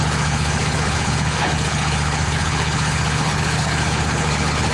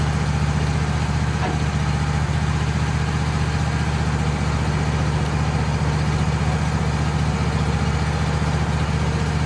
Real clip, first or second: second